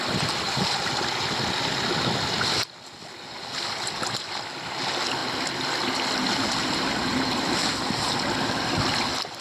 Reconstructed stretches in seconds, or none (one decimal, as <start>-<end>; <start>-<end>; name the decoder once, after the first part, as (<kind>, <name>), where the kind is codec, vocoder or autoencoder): none